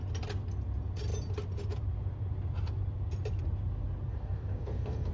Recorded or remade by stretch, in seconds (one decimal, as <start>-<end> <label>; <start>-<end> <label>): 0.0-4.1 recorded; 4.1-5.1 remade